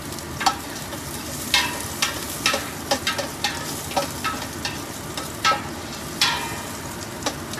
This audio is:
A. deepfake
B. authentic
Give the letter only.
B